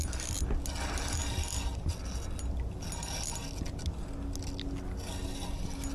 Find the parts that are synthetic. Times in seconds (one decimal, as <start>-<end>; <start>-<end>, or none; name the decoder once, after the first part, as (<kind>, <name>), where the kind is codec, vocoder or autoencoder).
none